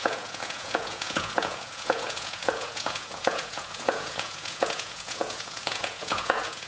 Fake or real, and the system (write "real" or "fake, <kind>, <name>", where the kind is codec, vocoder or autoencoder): fake, vocoder, Vocos